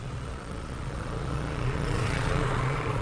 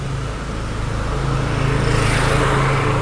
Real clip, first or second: second